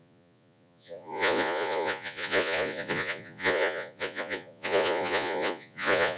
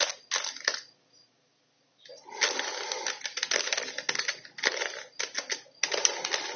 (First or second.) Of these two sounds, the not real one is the first